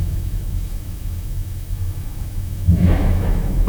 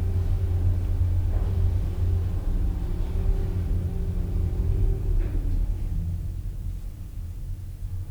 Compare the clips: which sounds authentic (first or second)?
second